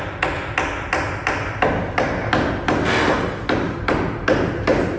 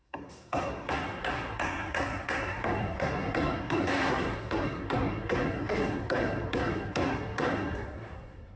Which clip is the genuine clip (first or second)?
first